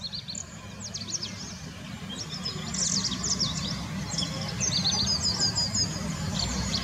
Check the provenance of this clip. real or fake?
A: real